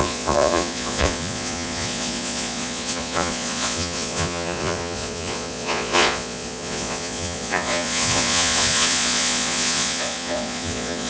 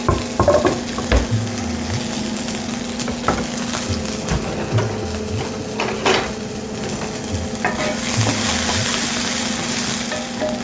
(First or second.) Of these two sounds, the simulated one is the first